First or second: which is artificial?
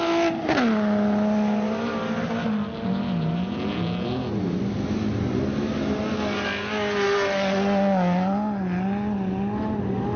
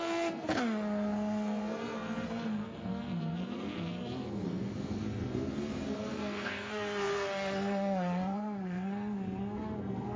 second